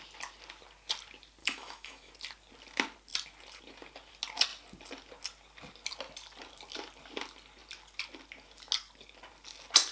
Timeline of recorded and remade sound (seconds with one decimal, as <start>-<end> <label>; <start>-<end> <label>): 0.0-1.4 recorded; 1.4-2.1 remade; 2.1-9.9 recorded